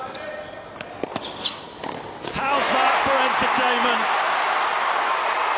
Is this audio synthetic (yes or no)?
no